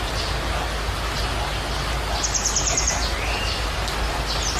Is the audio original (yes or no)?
yes